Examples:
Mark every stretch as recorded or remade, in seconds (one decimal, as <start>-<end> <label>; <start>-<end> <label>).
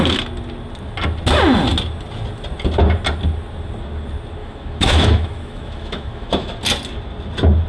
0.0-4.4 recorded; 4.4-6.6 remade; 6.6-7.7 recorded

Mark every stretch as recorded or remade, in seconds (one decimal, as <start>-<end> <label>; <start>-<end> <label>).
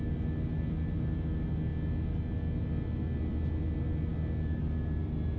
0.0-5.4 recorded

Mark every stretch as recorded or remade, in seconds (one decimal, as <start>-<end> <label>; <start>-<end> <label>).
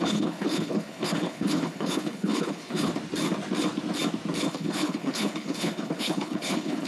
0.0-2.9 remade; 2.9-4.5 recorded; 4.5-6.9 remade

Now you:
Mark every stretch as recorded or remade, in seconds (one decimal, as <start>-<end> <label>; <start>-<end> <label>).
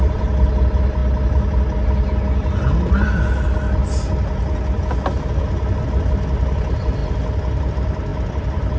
0.0-1.0 remade; 1.0-5.8 recorded; 5.8-7.0 remade; 7.0-7.7 recorded; 7.7-8.8 remade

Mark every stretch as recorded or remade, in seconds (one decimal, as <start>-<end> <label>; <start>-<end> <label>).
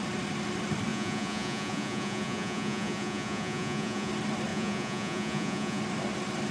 0.0-0.9 recorded; 0.9-4.1 remade; 4.1-4.5 recorded; 4.5-5.8 remade; 5.8-6.5 recorded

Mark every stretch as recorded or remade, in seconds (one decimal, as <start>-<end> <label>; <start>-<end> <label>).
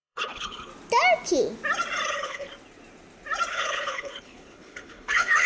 0.0-0.7 remade; 0.7-2.1 recorded; 2.1-2.5 remade; 2.5-3.5 recorded; 3.5-5.5 remade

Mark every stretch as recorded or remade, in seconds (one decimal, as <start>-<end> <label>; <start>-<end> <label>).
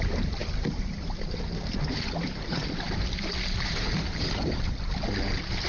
0.0-5.7 recorded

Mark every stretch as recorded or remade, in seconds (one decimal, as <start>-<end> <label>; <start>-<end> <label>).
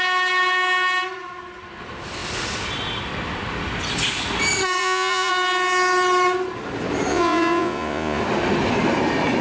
0.0-4.8 recorded; 4.8-5.3 remade; 5.3-7.1 recorded; 7.1-8.2 remade; 8.2-9.4 recorded